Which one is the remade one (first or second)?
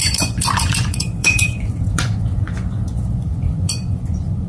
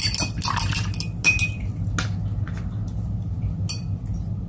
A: first